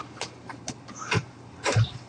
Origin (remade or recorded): recorded